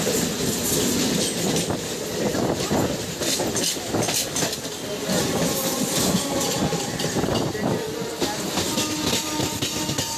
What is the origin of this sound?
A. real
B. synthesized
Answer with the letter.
A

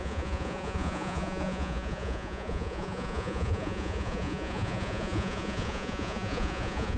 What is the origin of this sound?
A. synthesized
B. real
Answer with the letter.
A